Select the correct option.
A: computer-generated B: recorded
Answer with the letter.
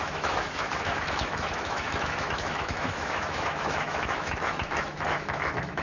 A